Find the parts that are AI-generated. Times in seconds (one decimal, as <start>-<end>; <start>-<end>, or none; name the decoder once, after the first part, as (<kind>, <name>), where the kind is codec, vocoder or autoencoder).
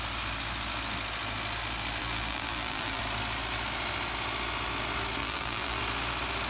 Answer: 2.0-3.0 (vocoder, BigVGAN v2); 5.2-5.8